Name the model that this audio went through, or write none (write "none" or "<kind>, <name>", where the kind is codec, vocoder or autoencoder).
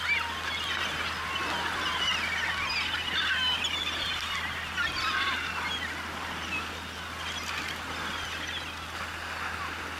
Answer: none